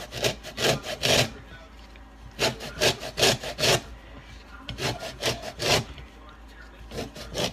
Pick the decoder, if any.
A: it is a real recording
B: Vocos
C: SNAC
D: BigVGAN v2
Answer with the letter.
A